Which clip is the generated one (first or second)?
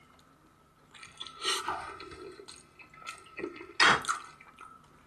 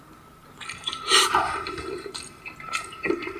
second